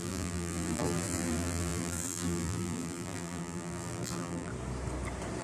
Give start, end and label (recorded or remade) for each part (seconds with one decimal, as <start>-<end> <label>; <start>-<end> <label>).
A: 0.0-4.5 remade; 4.5-5.4 recorded